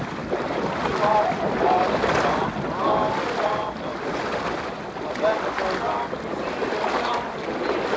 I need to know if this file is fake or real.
real